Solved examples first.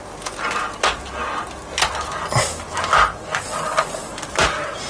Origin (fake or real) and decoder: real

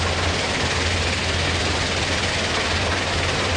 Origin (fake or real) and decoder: fake, vocoder, BigVGAN v2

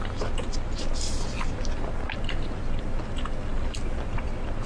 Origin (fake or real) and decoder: real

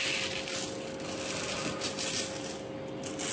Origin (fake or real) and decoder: real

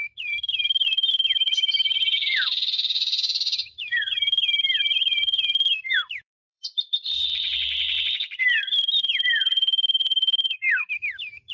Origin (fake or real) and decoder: fake, vocoder, BigVGAN v2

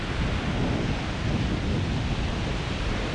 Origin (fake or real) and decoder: real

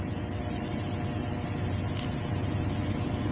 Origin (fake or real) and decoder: real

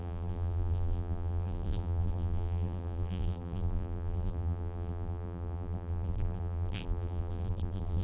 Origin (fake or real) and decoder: fake, vocoder, BigVGAN v2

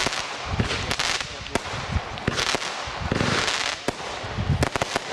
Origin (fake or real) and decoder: real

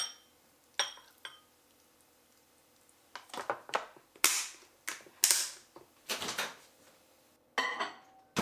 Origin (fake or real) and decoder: real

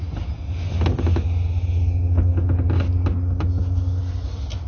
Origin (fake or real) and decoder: real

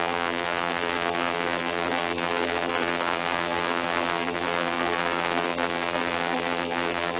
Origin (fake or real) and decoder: fake, vocoder, BigVGAN v2